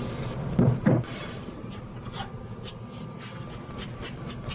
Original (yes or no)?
yes